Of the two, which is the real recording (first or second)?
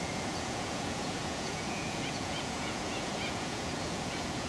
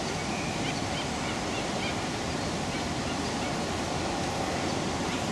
second